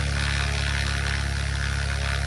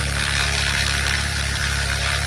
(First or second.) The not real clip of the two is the second